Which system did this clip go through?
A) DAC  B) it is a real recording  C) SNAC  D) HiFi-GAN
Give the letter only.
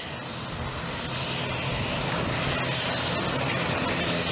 B